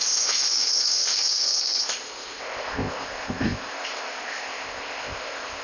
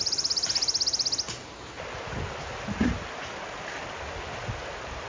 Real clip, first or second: second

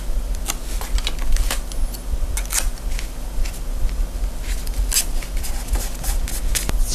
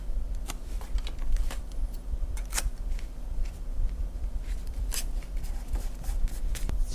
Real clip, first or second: first